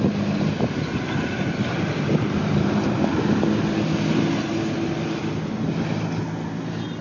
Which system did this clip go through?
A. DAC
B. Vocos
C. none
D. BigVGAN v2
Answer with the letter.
C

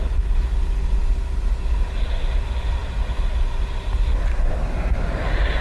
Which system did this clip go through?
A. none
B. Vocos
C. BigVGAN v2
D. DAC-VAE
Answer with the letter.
A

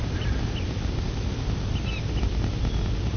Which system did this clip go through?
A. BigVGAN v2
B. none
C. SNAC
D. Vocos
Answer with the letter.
B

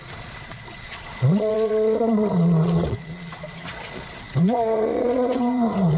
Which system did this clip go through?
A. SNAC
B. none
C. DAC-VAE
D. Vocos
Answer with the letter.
D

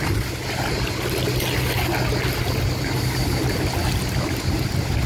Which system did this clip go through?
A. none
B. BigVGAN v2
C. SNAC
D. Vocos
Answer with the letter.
A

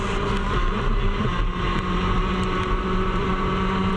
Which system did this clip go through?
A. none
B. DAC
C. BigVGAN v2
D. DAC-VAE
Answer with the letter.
C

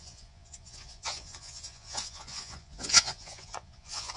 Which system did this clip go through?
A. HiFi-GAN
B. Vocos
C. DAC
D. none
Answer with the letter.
B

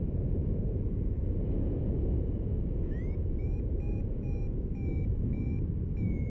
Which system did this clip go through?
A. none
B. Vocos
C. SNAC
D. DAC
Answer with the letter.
B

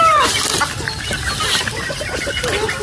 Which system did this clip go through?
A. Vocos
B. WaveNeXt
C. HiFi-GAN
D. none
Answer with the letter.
D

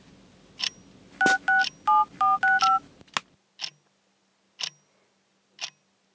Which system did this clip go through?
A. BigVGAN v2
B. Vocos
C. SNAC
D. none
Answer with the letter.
D